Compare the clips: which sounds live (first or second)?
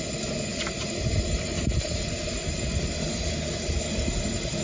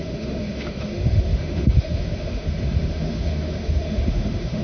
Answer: first